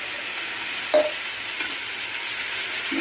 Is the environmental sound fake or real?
real